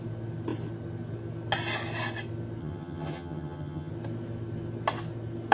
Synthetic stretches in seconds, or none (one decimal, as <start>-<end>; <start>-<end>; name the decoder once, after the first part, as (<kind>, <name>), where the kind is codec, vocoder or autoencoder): 2.6-3.9 (vocoder, HiFi-GAN)